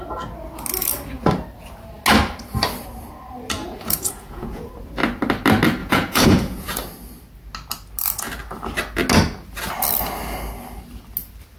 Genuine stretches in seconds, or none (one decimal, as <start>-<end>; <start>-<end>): 0.0-3.6; 4.7-5.8; 6.7-11.6